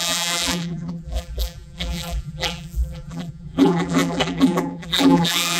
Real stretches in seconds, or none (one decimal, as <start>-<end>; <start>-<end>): none